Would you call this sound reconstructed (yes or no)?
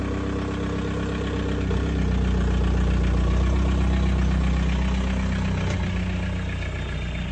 no